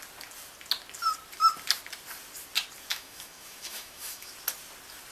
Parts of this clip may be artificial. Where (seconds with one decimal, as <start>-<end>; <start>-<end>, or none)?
2.9-4.3

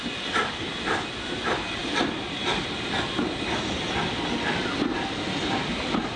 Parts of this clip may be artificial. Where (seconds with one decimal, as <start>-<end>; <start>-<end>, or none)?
none

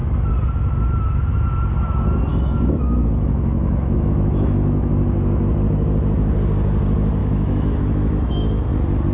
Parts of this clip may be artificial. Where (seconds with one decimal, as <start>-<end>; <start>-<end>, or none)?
2.3-4.9; 7.2-8.7

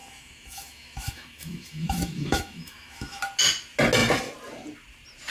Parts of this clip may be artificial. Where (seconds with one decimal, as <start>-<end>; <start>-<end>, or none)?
0.0-3.2

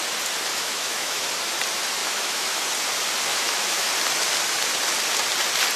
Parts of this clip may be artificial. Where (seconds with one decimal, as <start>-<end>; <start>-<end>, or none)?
0.5-1.3; 2.0-2.6; 3.3-3.9

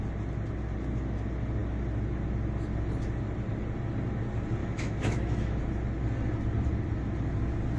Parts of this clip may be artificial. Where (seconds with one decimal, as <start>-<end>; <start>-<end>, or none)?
4.6-5.6

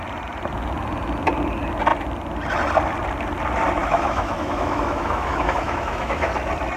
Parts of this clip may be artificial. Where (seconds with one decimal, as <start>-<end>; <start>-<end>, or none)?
3.8-6.3

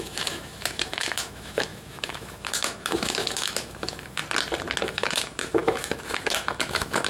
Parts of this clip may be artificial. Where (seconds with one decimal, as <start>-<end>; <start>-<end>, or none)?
0.0-4.2; 4.8-7.1